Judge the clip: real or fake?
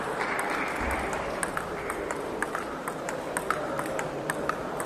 real